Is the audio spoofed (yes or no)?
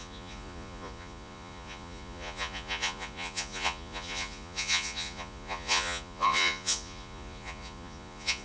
yes